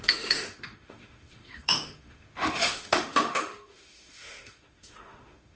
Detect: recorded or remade remade